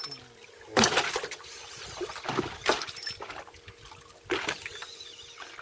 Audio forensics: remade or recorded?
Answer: recorded